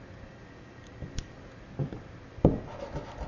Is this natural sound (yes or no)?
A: yes